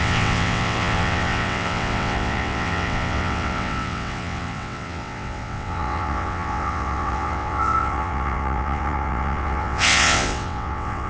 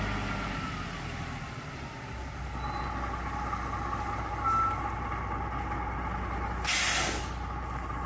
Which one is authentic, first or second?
second